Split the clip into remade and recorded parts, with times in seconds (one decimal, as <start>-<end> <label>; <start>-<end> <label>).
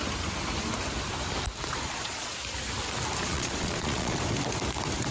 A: 0.0-1.7 recorded; 1.7-2.3 remade; 2.3-3.2 recorded; 3.2-4.2 remade; 4.2-5.1 recorded